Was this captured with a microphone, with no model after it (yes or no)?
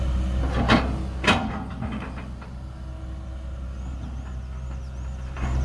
yes